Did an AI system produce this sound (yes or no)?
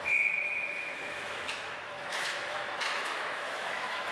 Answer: yes